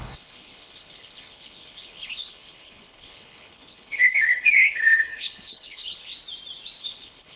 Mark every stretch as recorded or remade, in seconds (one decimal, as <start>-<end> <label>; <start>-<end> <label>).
0.0-6.1 remade; 6.1-6.8 recorded; 6.8-7.4 remade